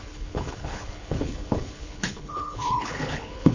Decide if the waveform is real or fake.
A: fake